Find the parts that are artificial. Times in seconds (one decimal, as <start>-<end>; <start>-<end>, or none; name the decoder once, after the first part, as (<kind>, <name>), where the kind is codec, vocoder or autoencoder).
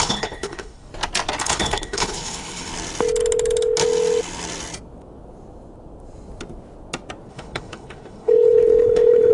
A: 0.0-0.9 (codec, HILCodec); 1.4-2.7; 7.3-9.3